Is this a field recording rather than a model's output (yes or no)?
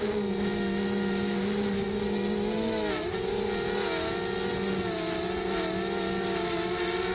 yes